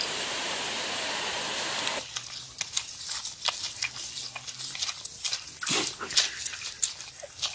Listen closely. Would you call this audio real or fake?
real